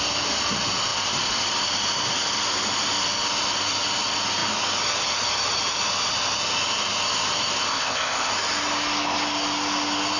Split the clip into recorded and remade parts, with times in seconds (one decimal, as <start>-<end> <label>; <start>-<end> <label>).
0.0-7.7 recorded; 7.7-8.3 remade; 8.3-10.2 recorded